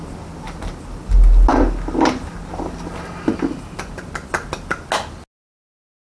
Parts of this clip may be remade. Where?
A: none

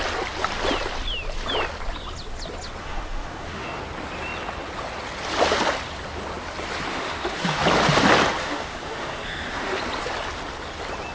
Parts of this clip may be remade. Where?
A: 2.8-3.8 (autoencoder, DAC-VAE); 6.9-7.6; 8.4-9.8

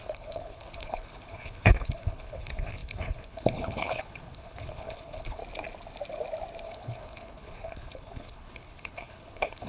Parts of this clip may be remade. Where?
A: 0.0-5.4 (codec, HILCodec); 6.6-9.7

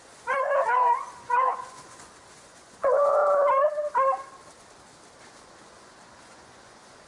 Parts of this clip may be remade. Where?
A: 0.0-3.2 (vocoder, Vocos); 5.3-7.1

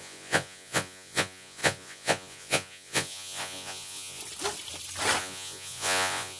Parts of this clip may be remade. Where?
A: 0.0-4.2 (vocoder, Vocos); 5.2-6.4

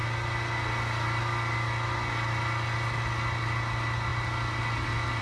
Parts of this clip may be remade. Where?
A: none

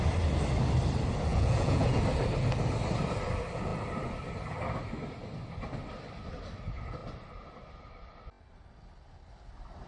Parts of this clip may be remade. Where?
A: 1.3-2.0 (vocoder, Vocos)